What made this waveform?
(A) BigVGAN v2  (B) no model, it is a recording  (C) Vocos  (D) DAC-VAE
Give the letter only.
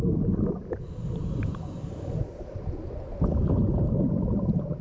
B